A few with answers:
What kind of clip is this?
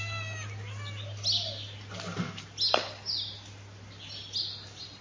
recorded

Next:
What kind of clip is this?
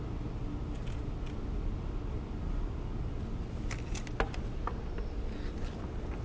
recorded